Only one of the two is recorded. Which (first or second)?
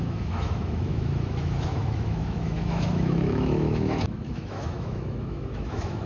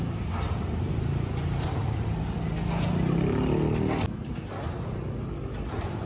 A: second